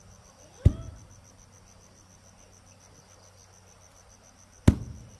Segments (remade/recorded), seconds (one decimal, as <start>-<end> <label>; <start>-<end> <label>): 0.0-5.2 recorded